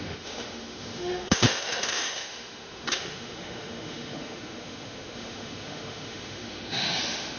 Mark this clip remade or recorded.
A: remade